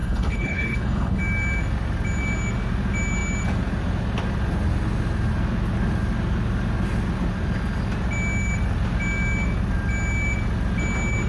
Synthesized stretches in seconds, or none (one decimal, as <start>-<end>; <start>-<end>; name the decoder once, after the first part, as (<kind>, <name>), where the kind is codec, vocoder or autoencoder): 0.0-1.2 (codec, HILCodec)